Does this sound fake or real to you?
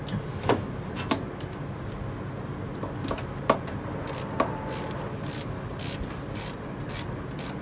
real